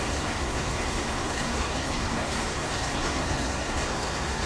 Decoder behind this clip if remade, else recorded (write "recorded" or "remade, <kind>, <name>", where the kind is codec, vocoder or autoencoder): remade, codec, SNAC